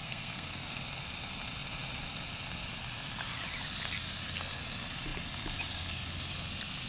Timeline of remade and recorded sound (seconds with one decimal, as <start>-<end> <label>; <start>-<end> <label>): 0.0-0.8 remade; 0.8-6.9 recorded